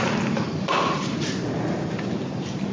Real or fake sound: fake